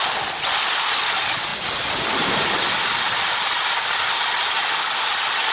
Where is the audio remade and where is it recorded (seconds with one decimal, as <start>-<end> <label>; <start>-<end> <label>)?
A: 0.0-5.5 recorded